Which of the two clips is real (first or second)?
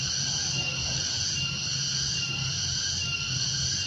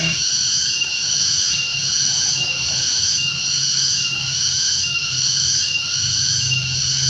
first